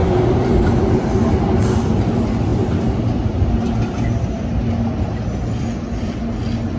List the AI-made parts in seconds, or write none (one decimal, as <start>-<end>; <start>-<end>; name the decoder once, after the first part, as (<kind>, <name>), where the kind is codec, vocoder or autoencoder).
none